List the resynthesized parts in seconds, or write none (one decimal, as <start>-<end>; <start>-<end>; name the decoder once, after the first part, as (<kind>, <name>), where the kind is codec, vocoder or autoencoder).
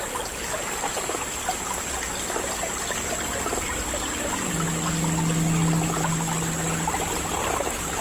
0.4-1.5 (vocoder, BigVGAN v2)